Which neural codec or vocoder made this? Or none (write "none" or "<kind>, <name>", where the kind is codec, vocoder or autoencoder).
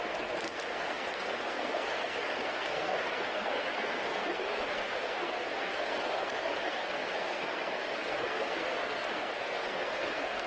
codec, SNAC